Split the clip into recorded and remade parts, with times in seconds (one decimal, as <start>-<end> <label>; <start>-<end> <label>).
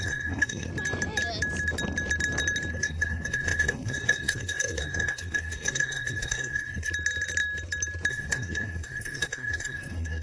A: 0.0-0.7 remade; 0.7-2.7 recorded; 2.7-6.9 remade; 6.9-8.1 recorded; 8.1-10.2 remade